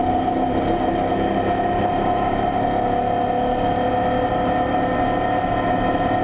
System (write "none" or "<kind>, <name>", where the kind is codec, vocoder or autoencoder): none